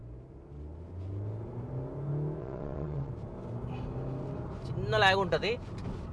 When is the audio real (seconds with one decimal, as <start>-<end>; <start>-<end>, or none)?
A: 0.0-2.4; 3.1-6.1